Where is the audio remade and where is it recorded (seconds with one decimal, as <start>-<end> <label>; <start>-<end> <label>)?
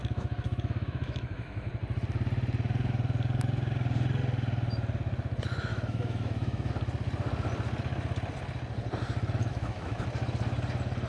0.0-1.7 remade; 1.7-5.7 recorded; 5.7-6.7 remade; 6.7-9.4 recorded; 9.4-10.0 remade; 10.0-11.1 recorded